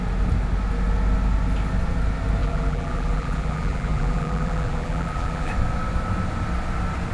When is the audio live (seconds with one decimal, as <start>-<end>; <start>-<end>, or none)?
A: 0.0-2.4; 5.5-7.1